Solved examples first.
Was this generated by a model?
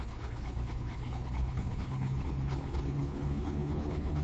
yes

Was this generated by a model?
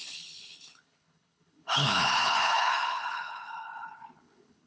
yes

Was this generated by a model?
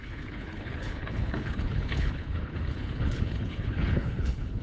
yes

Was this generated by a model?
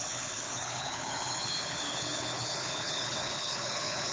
yes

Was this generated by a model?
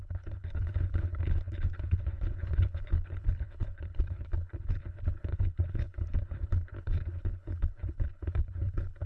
yes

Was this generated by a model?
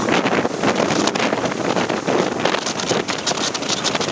no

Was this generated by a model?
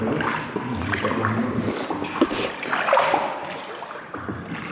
no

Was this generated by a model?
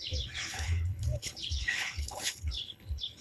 yes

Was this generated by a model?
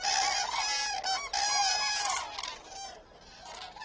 no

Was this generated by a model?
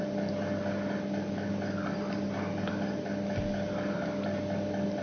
no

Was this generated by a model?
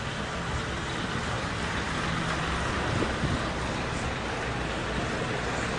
no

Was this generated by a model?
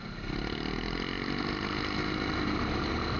no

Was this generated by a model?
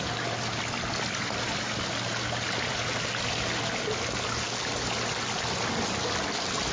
no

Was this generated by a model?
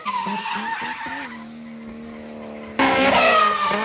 no